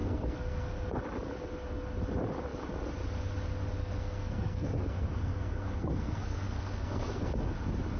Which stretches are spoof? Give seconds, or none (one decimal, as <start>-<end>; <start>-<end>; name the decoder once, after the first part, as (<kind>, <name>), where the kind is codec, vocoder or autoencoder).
0.0-1.0 (codec, SNAC); 3.8-7.5